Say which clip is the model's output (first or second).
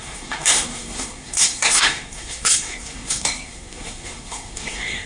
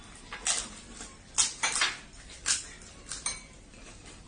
first